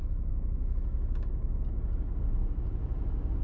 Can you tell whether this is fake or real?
real